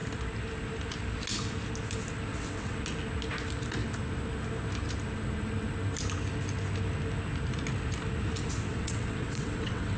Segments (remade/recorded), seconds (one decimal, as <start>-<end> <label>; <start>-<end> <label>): 0.0-2.3 recorded; 2.3-2.8 remade; 2.8-8.7 recorded; 8.7-10.0 remade